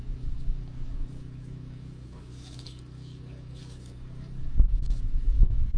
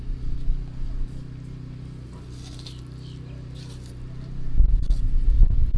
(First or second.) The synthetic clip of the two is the first